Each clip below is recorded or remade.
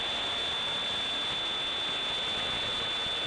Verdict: recorded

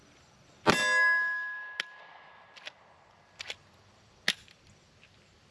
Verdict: recorded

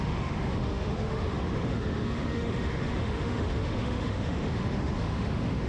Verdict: remade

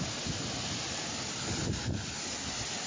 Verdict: recorded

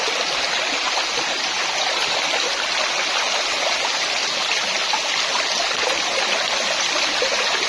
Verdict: recorded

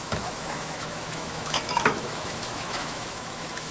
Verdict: remade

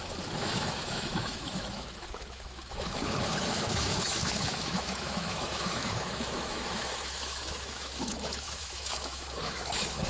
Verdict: remade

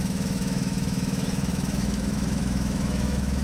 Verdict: remade